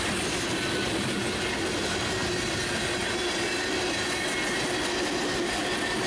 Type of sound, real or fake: real